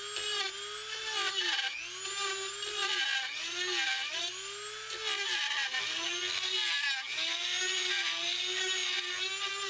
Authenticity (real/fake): real